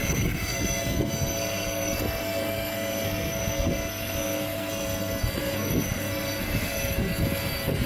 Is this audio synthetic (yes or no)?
yes